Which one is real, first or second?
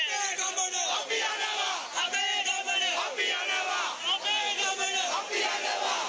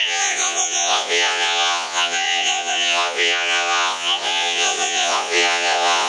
first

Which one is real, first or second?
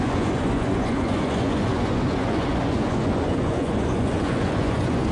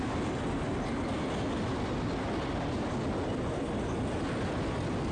second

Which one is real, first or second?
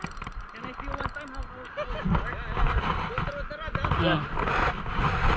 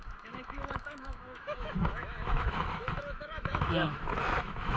first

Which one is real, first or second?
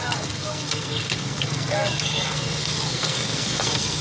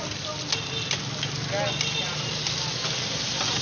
second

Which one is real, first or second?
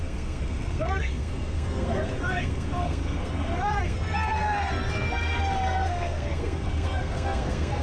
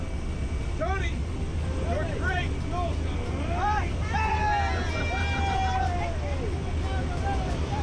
second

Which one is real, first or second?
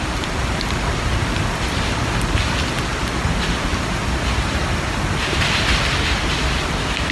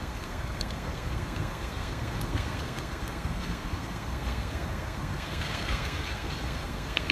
first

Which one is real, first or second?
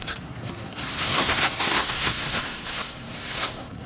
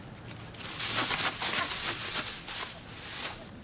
second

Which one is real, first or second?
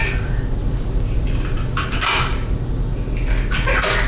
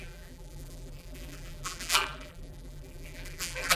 first